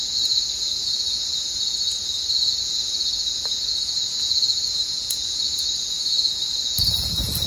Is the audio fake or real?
fake